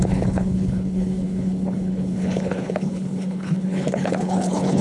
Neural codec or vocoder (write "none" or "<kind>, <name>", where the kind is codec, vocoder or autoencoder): codec, HILCodec